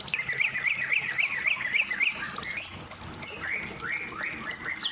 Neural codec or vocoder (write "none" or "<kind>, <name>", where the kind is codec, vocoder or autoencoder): none